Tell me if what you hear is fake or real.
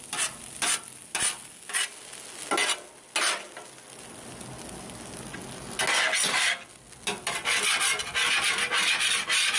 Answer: real